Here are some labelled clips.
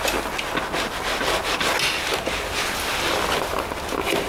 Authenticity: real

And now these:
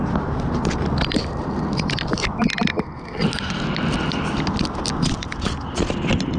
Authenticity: real